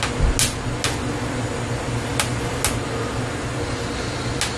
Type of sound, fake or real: real